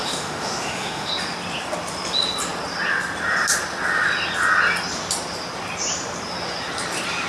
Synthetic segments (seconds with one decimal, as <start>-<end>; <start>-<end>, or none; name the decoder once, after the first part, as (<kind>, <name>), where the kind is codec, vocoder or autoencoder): 0.0-1.1 (autoencoder, DAC-VAE)